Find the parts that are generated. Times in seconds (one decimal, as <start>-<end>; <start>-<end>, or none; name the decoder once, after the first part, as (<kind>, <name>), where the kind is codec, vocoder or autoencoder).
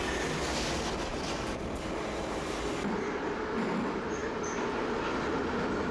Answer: none